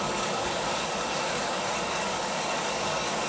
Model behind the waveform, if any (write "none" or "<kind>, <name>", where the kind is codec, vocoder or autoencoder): codec, DAC